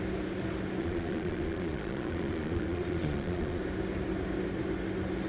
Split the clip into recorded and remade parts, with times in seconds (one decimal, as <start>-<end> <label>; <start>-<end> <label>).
0.0-0.8 recorded; 0.8-3.6 remade; 3.6-5.3 recorded